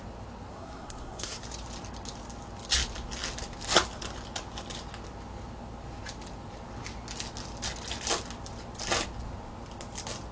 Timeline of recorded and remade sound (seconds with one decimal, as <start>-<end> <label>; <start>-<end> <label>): 0.0-0.5 recorded; 0.5-1.4 remade; 1.4-10.3 recorded